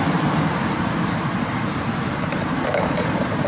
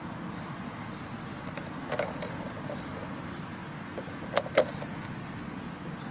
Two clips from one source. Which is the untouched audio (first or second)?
second